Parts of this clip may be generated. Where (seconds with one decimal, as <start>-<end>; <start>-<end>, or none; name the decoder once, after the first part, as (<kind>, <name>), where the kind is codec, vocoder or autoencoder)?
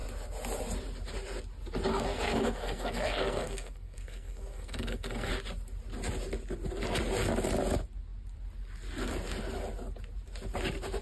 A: 1.9-5.3 (codec, SNAC)